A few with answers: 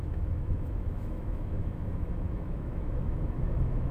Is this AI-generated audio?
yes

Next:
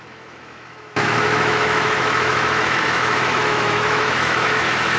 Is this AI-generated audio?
yes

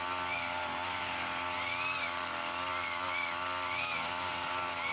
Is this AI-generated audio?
no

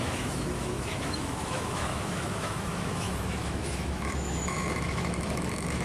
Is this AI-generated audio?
yes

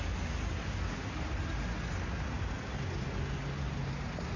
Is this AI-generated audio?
no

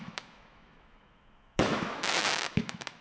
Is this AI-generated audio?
yes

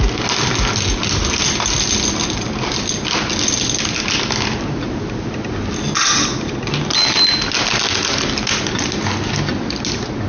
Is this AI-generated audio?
no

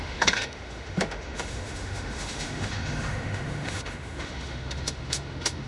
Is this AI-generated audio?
yes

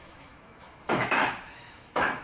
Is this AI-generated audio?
yes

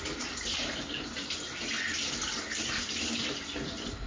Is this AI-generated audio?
no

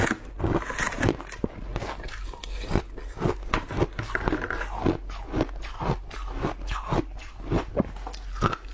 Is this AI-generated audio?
no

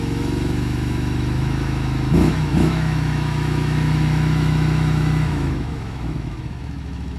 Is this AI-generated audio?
yes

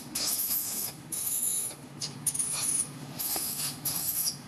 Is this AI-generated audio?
yes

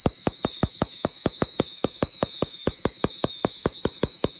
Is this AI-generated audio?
yes